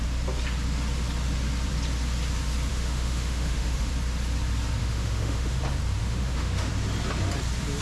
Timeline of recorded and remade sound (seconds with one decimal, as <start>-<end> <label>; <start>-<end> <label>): 0.0-2.7 recorded; 2.7-3.9 remade; 3.9-4.8 recorded; 4.8-5.6 remade; 5.6-6.0 recorded; 6.0-6.7 remade; 6.7-7.8 recorded